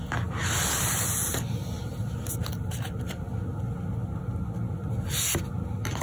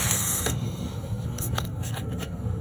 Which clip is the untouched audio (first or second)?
first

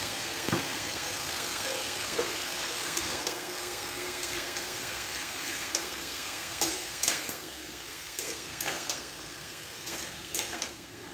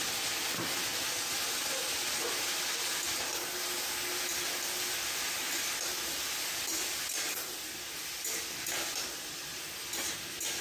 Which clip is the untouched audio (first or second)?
second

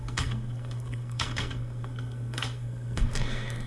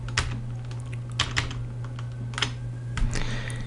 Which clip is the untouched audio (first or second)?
second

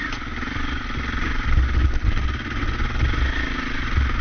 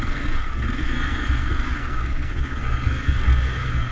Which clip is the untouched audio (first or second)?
first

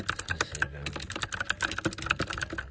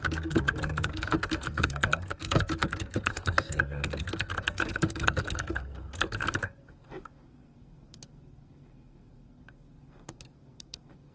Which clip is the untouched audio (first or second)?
first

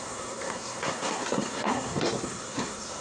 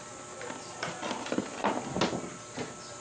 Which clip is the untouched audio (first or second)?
second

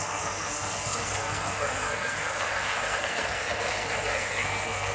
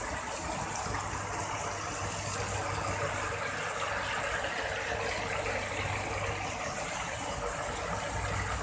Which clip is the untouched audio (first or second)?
second